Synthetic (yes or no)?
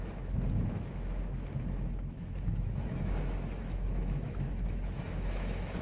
yes